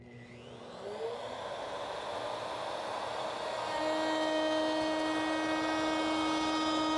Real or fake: real